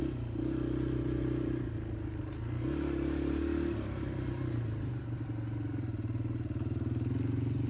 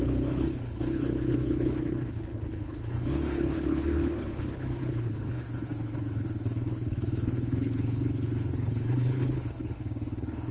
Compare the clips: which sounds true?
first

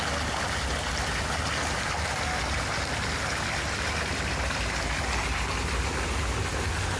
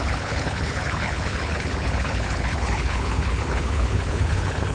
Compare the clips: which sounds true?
first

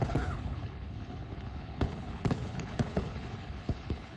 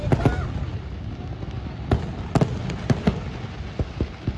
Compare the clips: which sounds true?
second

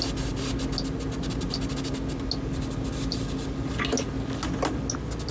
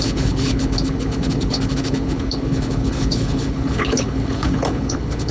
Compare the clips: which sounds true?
first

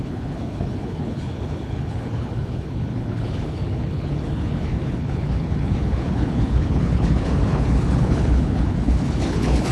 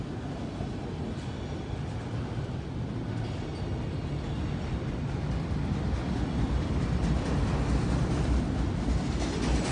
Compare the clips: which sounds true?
second